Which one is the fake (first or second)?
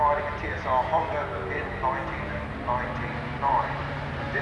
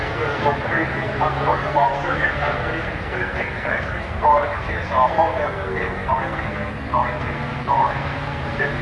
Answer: second